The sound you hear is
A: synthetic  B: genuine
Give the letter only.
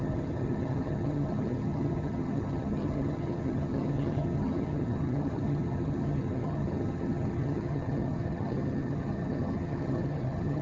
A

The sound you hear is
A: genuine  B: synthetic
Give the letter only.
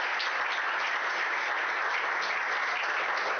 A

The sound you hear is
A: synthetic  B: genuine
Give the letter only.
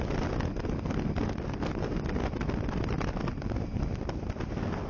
B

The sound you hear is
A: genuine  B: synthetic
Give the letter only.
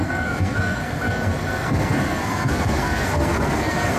B